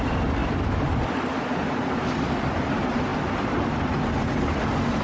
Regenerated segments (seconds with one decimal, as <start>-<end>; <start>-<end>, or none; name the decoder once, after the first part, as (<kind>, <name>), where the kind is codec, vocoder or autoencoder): 0.4-2.3 (vocoder, BigVGAN v2); 3.1-3.7